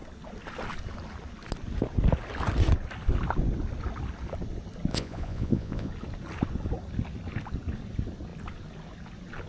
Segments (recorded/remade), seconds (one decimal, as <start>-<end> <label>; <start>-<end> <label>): 0.0-4.9 recorded; 4.9-5.9 remade; 5.9-9.5 recorded